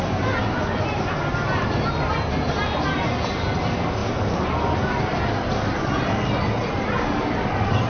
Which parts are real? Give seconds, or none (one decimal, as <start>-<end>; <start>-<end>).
0.0-7.9